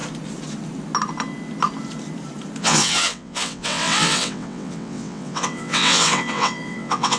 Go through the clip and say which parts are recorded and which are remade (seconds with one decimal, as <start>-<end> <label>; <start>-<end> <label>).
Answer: 0.0-2.6 recorded; 2.6-7.2 remade